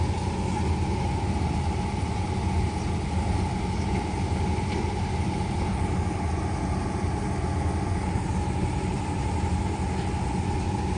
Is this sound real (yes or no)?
yes